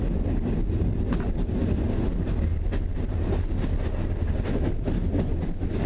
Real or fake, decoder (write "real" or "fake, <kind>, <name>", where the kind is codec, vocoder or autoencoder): real